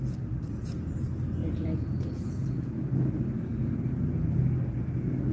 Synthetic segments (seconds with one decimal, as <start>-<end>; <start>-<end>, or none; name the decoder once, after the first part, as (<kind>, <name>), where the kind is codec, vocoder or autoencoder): 1.4-3.0 (vocoder, Vocos)